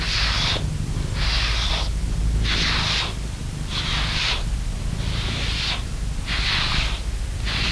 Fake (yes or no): no